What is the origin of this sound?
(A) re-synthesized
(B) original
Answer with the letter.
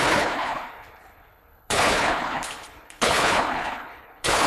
A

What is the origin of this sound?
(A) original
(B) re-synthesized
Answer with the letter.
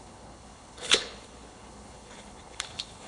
B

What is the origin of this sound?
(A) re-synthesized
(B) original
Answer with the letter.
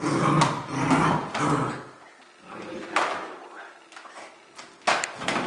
B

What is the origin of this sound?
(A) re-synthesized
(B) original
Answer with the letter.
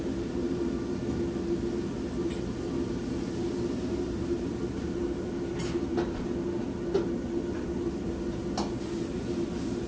B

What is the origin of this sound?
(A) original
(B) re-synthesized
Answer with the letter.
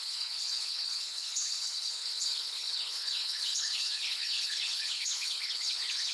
B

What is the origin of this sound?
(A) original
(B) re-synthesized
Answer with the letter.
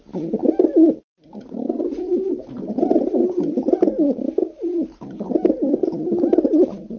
A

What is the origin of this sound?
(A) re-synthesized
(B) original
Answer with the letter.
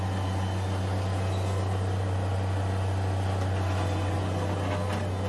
B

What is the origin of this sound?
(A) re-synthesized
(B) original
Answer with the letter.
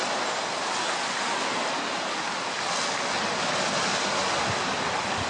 B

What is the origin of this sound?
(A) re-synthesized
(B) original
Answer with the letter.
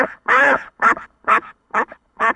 A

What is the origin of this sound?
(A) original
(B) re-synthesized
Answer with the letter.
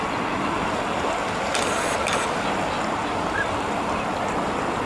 A